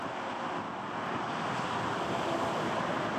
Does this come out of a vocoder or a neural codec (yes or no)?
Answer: no